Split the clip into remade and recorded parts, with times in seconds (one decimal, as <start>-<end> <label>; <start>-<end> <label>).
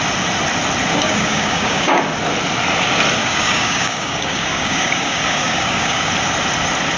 0.0-0.9 recorded; 0.9-2.0 remade; 2.0-3.2 recorded; 3.2-6.1 remade; 6.1-7.0 recorded